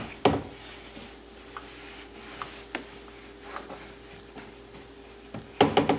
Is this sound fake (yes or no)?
no